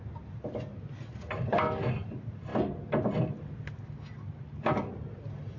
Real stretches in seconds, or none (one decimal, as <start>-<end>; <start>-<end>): 0.0-5.6